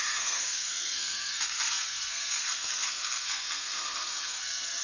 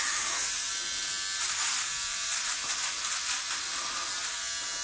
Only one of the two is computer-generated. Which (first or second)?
first